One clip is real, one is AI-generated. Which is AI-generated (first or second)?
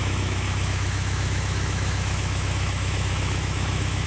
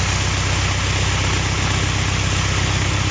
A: first